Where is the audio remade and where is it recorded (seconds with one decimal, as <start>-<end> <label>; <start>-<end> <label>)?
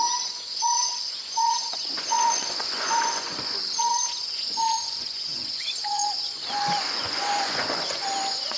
0.0-8.6 remade